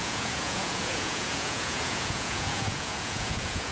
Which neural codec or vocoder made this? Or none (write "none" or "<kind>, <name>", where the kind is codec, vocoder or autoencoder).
vocoder, Vocos